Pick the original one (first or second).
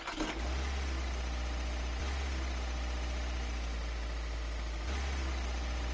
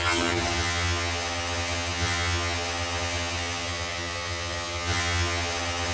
first